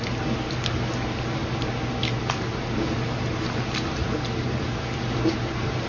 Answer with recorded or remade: recorded